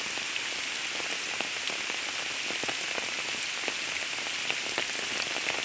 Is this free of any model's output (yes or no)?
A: yes